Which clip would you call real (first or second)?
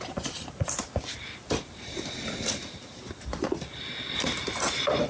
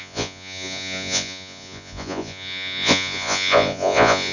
first